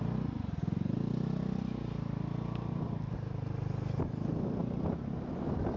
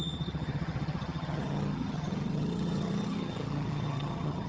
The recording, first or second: first